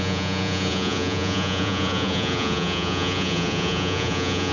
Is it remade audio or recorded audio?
remade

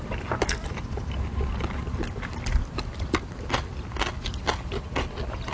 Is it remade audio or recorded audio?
recorded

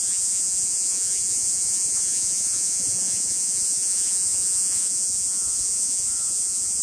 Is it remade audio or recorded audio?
remade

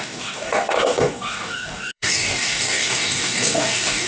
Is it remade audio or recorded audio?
remade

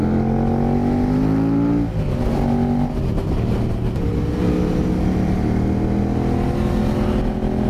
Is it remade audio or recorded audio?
recorded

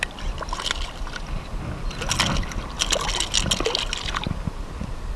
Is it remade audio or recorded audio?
recorded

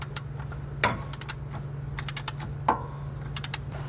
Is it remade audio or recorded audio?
recorded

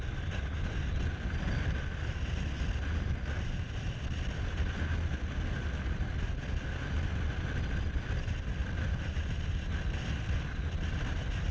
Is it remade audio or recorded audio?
recorded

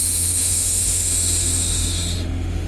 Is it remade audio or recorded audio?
remade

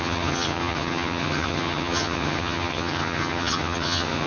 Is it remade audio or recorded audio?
remade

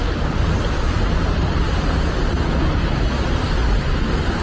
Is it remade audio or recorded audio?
recorded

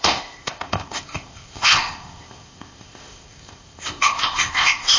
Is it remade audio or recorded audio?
remade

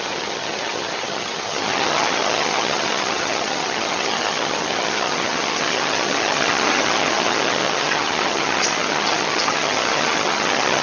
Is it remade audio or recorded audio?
remade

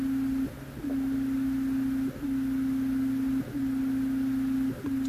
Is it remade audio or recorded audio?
recorded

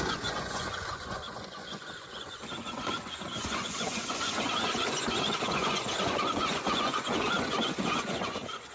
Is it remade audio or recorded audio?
remade